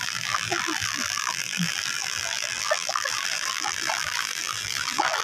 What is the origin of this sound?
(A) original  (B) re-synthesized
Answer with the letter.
B